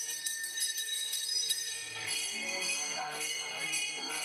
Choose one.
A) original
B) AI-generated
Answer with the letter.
B